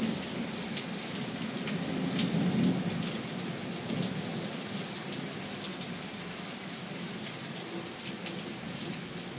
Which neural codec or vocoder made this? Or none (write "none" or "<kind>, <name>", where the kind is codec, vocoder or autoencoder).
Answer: none